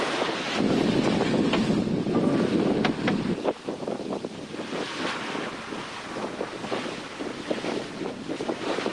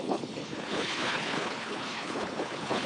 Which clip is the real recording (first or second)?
first